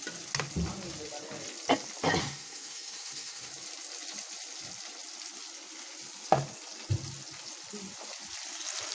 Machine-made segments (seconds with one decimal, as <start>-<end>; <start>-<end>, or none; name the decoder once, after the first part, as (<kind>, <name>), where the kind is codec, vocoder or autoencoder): 2.2-3.5 (codec, SNAC)